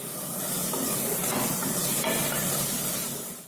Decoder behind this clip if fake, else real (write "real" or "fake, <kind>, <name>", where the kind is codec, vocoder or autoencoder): real